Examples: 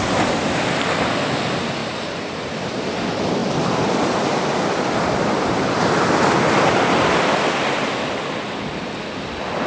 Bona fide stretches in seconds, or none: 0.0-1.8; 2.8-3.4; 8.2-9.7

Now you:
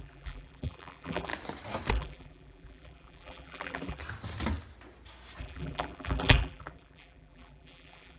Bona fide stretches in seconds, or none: 1.3-1.9; 4.0-5.4